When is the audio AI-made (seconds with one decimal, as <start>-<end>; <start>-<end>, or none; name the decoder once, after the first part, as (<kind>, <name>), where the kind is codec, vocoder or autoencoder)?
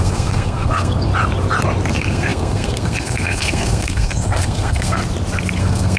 0.0-1.1 (codec, SNAC); 1.9-5.0; 5.6-6.0